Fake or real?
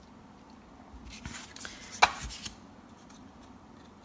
real